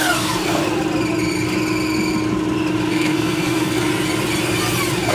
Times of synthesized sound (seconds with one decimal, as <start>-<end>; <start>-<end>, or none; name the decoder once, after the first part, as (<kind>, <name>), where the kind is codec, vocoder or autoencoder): 0.0-0.6 (codec, SNAC); 2.9-3.9